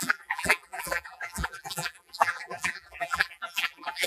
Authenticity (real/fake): fake